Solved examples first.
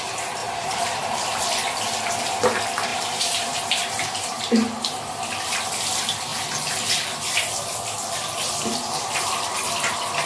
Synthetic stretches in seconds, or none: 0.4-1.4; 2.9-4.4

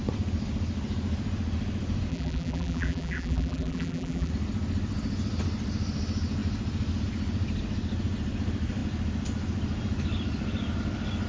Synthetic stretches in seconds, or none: 2.1-4.3

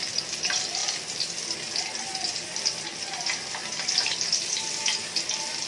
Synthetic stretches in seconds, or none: 0.0-0.8; 3.1-5.7